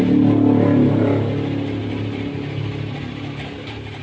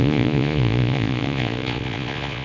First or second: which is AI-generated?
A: second